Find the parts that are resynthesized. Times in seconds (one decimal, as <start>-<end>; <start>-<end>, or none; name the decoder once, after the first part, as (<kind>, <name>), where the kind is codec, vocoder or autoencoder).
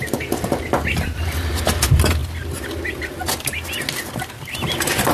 none